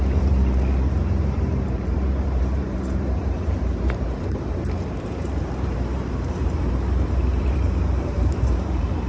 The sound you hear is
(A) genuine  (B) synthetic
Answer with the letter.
B